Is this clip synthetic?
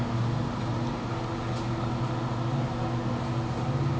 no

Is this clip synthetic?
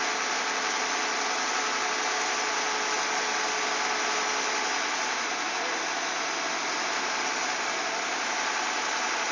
no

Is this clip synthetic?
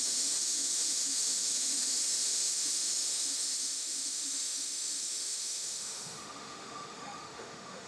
yes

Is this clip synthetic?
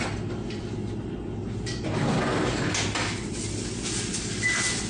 no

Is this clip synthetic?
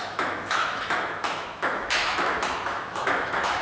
yes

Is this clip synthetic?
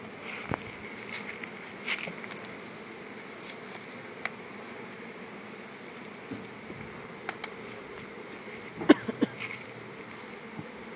no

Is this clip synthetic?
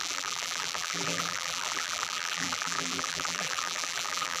yes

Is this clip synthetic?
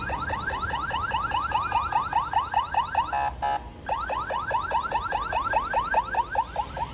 no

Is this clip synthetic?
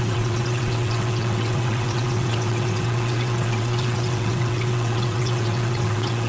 yes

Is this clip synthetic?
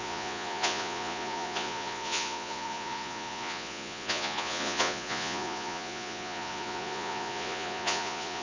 yes